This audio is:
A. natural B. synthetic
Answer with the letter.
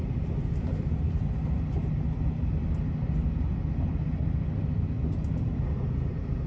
A